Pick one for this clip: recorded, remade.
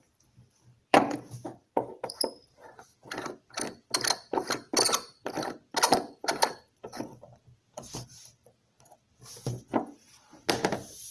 remade